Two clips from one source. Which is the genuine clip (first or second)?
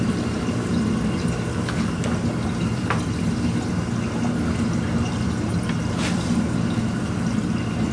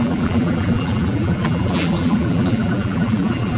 first